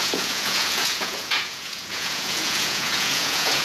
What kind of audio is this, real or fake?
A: fake